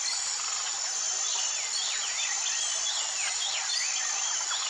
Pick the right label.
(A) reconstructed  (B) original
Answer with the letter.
B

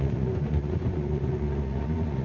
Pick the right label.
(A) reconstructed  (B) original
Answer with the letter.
A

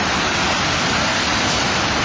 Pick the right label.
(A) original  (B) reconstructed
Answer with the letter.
A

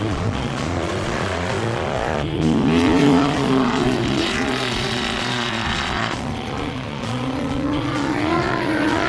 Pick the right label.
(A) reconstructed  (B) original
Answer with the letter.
A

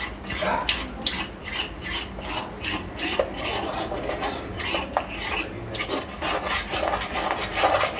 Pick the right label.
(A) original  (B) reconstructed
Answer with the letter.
A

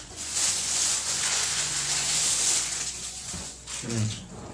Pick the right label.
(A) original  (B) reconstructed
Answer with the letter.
B